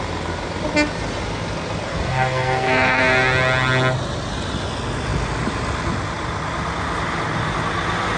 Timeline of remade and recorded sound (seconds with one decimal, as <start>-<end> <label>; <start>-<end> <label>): 0.0-1.9 recorded; 1.9-3.0 remade; 3.0-8.2 recorded